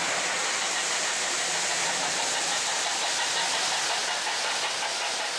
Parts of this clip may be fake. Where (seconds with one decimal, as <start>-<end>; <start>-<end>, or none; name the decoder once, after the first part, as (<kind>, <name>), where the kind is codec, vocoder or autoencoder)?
0.4-3.1 (vocoder, BigVGAN v2)